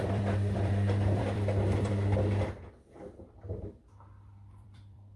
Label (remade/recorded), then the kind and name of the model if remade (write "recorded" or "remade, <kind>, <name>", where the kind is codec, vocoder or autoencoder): remade, vocoder, BigVGAN v2